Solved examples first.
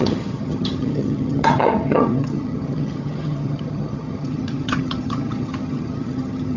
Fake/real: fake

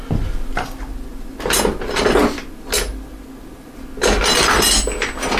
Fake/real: real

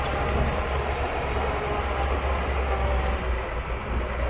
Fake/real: real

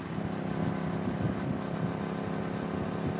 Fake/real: real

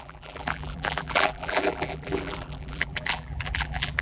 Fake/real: fake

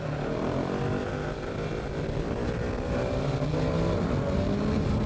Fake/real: real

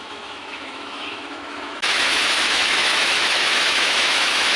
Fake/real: fake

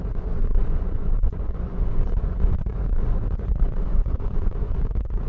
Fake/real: fake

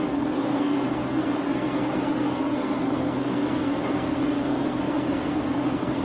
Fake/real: fake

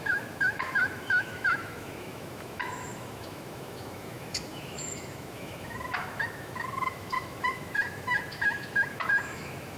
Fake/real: fake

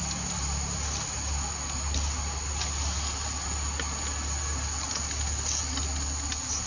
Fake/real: real